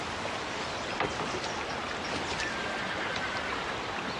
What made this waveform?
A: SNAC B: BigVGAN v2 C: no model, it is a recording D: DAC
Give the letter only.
C